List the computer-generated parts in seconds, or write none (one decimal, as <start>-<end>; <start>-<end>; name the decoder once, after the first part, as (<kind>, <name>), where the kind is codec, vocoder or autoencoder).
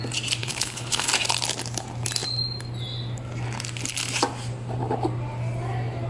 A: 0.4-1.1 (codec, HILCodec)